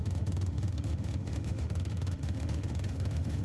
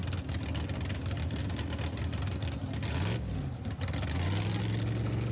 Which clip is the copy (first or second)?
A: first